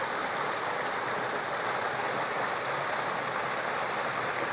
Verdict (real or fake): real